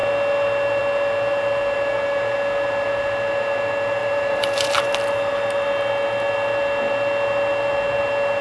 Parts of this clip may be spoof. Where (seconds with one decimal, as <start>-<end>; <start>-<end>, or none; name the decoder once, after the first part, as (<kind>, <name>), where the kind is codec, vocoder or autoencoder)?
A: 4.0-4.9 (vocoder, BigVGAN v2)